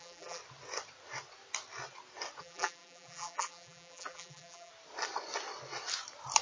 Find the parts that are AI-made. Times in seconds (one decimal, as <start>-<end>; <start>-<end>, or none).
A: 0.0-0.4; 2.4-4.7